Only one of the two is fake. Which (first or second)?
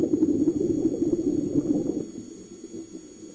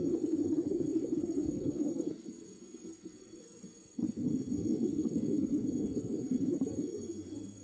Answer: second